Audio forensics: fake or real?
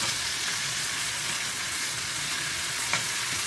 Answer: fake